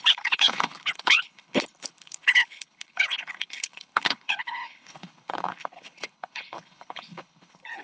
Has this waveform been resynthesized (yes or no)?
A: yes